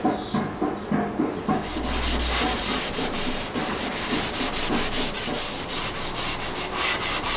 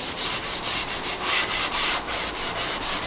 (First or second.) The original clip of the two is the first